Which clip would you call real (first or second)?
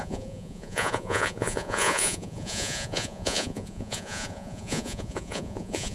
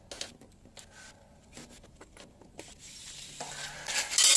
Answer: second